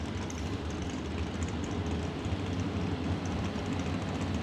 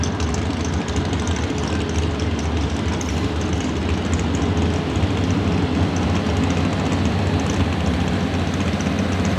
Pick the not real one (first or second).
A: first